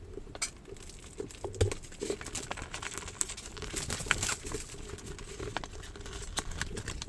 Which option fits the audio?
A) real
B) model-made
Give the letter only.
A